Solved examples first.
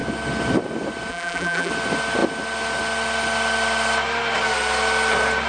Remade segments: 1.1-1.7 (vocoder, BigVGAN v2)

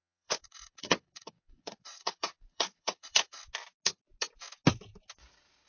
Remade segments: 0.0-3.4 (vocoder, Vocos)

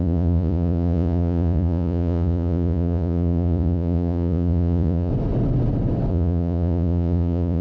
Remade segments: 0.0-5.1 (vocoder, Vocos); 6.1-7.6

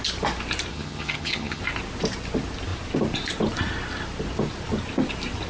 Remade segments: 0.7-1.6 (vocoder, HiFi-GAN)

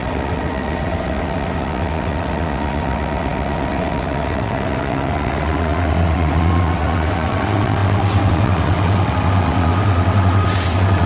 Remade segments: 0.0-11.1 (vocoder, WaveNeXt)